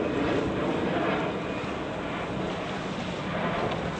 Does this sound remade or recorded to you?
recorded